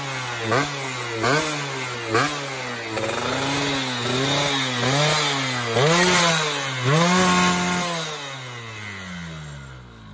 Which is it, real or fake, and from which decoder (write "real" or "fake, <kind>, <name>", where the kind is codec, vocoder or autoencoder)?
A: real